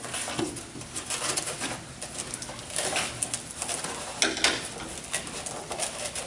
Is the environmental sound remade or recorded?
recorded